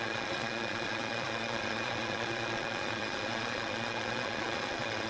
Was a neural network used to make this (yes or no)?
yes